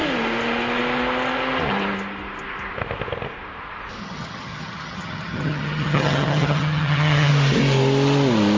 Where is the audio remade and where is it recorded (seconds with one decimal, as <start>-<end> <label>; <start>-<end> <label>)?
0.0-4.0 recorded; 4.0-7.3 remade; 7.3-8.6 recorded